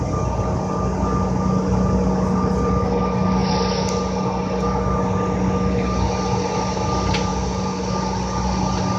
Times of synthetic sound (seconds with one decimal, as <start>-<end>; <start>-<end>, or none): none